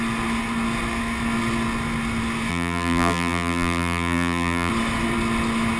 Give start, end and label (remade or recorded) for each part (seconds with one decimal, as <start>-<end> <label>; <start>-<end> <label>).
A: 0.0-2.5 recorded; 2.5-4.7 remade; 4.7-5.8 recorded